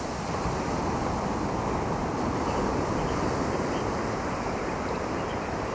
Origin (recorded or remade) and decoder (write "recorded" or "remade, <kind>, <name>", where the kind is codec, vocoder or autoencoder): recorded